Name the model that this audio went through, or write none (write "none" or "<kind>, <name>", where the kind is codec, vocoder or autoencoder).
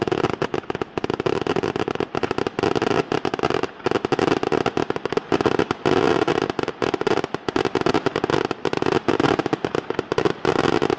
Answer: none